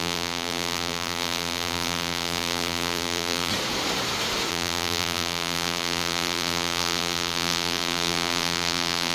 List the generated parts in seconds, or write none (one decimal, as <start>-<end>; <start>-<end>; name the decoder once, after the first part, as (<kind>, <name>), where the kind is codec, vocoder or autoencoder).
0.0-3.5 (vocoder, BigVGAN v2); 4.5-9.1